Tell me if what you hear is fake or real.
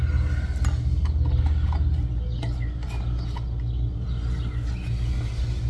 real